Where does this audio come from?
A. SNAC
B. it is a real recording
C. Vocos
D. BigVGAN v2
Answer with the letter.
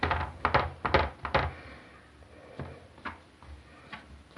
B